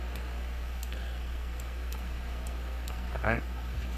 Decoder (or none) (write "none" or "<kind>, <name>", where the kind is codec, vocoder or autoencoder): codec, SNAC